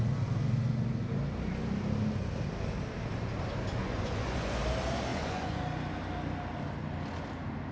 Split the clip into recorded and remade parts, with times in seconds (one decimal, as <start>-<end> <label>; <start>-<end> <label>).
0.0-3.8 recorded; 3.8-4.6 remade; 4.6-5.1 recorded; 5.1-5.6 remade; 5.6-7.7 recorded